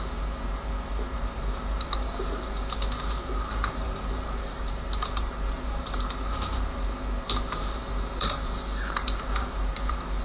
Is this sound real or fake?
fake